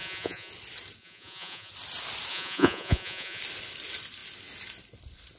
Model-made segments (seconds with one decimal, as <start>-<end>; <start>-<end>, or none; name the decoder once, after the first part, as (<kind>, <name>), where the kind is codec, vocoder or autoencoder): 0.0-0.5 (vocoder, Vocos); 1.0-1.7; 2.3-3.4